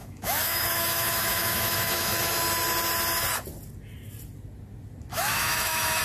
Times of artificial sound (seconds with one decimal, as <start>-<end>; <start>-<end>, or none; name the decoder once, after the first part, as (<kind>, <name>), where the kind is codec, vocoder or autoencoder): 0.0-2.3 (autoencoder, DAC-VAE); 5.1-6.0